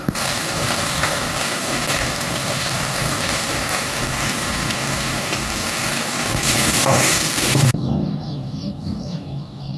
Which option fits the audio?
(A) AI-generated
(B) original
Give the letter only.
A